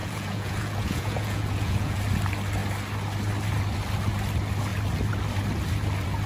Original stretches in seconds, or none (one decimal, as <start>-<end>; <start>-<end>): 2.0-6.3